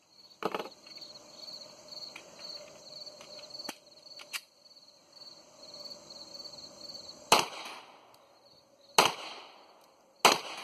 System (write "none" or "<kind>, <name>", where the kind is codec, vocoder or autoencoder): none